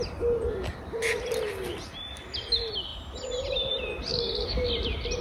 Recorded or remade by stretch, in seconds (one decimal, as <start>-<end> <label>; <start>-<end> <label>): 0.0-4.1 recorded; 4.1-4.7 remade; 4.7-5.2 recorded